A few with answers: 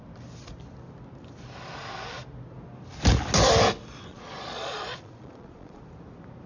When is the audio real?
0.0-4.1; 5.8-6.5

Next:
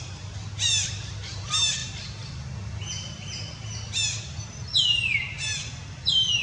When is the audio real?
0.0-6.4

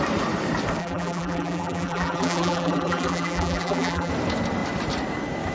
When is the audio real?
0.0-0.8; 4.1-5.5

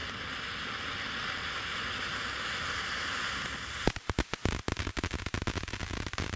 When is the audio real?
0.0-6.4

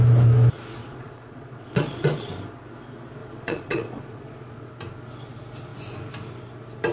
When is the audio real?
0.0-0.8; 2.3-3.2; 4.7-6.9

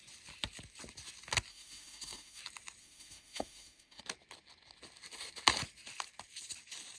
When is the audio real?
0.0-1.5; 2.4-2.8; 4.0-7.0

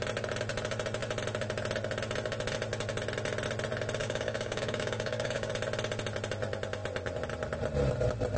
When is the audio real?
0.0-4.0; 5.5-8.4